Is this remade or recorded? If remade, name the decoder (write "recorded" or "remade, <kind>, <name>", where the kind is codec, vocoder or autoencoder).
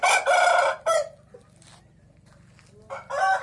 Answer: recorded